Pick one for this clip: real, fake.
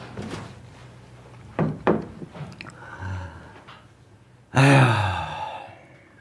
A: real